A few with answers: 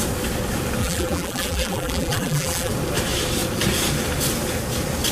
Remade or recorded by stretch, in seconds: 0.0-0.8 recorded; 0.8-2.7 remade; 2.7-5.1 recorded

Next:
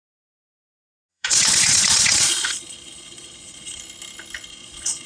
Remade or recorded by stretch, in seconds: 0.0-1.1 recorded; 1.1-3.8 remade; 3.8-4.5 recorded; 4.5-5.1 remade

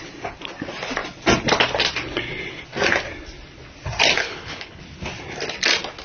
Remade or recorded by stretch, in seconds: 0.0-4.2 recorded; 4.2-4.8 remade; 4.8-6.0 recorded